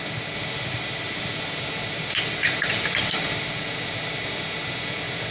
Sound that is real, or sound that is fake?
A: real